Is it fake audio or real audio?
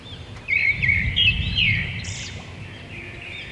fake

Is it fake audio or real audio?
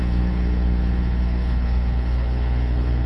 fake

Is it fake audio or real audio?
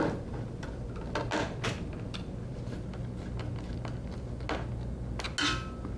real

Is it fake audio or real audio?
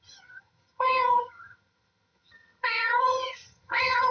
fake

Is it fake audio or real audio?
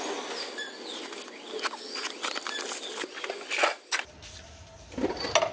real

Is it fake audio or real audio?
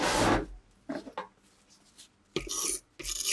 real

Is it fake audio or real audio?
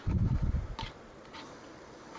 real